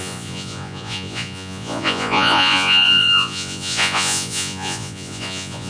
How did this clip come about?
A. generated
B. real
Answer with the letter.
A